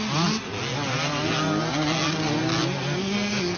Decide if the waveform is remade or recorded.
recorded